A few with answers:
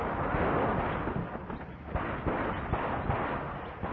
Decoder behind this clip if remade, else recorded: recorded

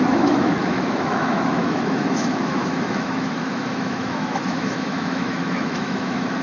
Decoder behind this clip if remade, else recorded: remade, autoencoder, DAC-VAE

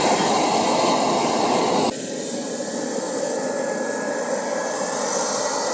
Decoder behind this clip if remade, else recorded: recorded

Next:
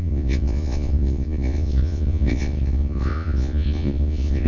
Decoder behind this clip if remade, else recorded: remade, vocoder, Vocos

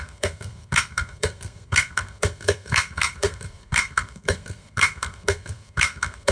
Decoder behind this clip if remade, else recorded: remade, codec, SNAC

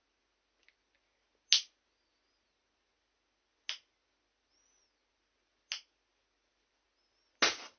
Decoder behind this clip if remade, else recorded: recorded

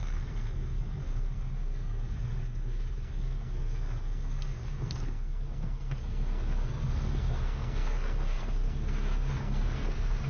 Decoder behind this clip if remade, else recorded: remade, codec, SNAC